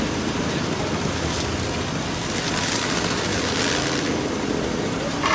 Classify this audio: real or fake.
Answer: real